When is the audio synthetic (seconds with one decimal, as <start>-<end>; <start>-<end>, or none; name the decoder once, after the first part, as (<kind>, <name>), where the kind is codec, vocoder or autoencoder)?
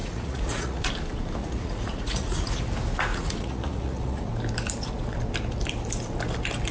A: 0.0-0.9 (vocoder, Vocos); 1.4-2.6; 3.1-4.3